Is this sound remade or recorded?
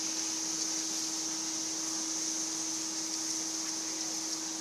recorded